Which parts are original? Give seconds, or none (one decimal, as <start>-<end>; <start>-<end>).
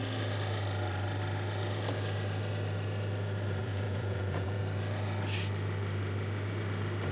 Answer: 0.0-3.6; 4.6-7.1